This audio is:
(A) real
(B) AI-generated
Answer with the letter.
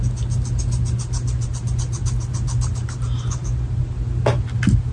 A